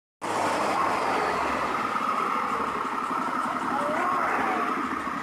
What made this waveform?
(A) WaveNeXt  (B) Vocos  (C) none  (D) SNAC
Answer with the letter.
C